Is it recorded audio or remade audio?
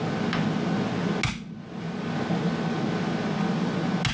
recorded